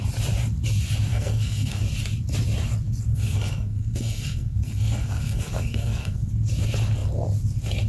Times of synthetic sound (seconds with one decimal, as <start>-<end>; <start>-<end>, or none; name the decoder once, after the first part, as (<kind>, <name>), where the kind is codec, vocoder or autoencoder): 1.1-1.8 (codec, SNAC); 3.1-6.3